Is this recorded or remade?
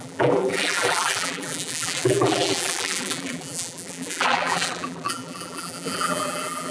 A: remade